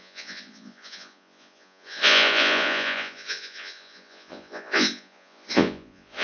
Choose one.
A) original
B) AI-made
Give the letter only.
B